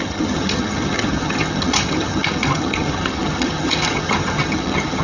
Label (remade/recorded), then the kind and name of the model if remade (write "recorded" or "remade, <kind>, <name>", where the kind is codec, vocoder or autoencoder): remade, vocoder, HiFi-GAN